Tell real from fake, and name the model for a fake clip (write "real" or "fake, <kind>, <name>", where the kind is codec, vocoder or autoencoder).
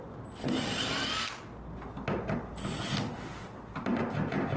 real